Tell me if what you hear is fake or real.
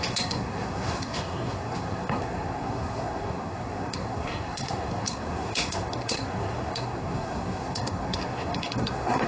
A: fake